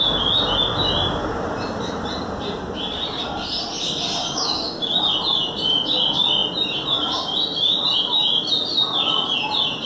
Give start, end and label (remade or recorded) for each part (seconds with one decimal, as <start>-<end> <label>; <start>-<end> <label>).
0.0-4.2 recorded; 4.2-4.9 remade; 4.9-9.9 recorded